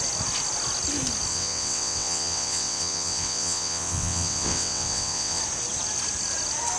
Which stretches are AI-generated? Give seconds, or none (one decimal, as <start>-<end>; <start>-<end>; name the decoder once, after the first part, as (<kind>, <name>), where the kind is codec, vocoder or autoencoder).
1.3-5.4 (vocoder, WaveNeXt)